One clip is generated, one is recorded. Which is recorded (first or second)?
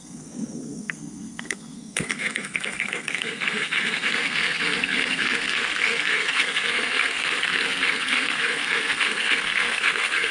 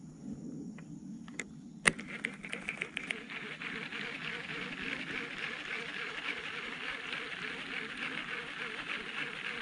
second